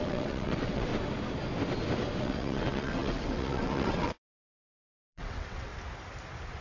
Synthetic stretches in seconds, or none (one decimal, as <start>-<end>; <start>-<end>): 0.0-0.9; 2.2-5.7